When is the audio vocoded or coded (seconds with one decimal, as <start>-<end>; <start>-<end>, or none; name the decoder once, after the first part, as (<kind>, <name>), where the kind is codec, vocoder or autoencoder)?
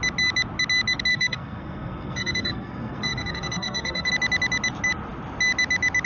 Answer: 1.1-4.1 (codec, SNAC)